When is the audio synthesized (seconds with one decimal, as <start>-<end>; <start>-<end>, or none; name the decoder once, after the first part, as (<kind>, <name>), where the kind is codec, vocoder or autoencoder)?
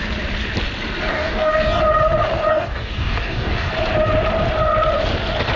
1.1-1.8 (codec, DAC); 2.5-3.7